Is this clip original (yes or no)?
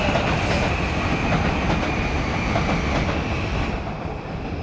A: yes